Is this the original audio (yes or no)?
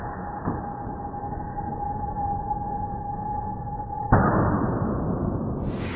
yes